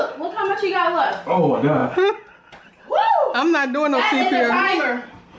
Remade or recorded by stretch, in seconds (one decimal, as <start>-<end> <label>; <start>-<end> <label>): 0.0-5.4 recorded